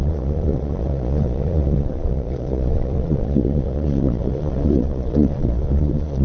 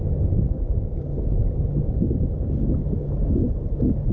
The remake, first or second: first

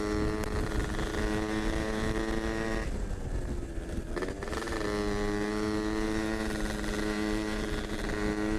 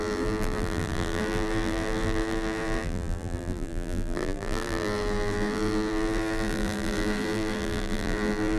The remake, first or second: second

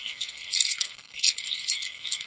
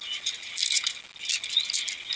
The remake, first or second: first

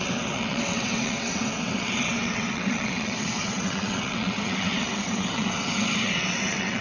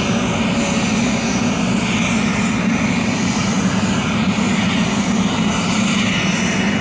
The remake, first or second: first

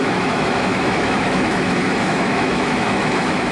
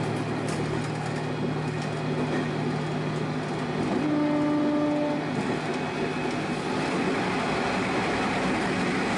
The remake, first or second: first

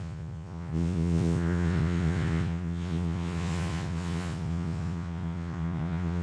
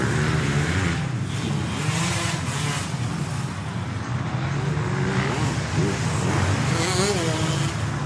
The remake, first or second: first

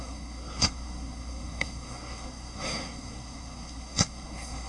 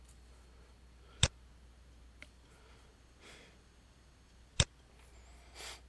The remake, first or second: first